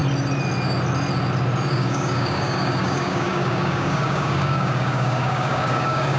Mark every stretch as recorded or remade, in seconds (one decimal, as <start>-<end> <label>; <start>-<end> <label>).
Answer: 0.0-1.7 recorded; 1.7-6.2 remade